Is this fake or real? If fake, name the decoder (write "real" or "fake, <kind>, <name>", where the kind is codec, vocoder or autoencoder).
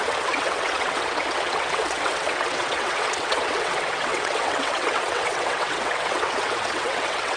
fake, vocoder, WaveNeXt